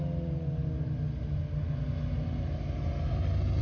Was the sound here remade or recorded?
recorded